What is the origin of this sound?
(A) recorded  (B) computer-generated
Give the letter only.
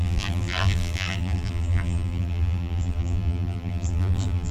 B